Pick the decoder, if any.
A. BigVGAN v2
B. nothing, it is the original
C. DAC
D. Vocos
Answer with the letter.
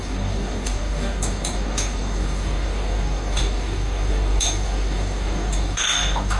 C